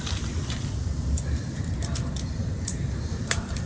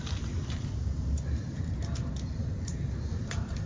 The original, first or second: second